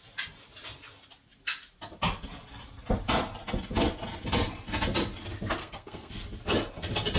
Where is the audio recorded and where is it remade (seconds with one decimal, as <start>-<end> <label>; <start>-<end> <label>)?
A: 0.0-5.6 recorded; 5.6-6.1 remade; 6.1-7.2 recorded